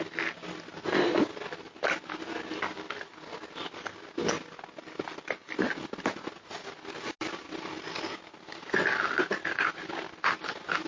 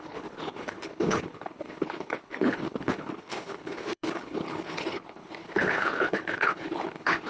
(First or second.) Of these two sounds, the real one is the first